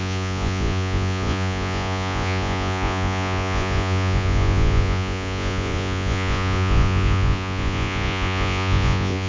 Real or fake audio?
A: fake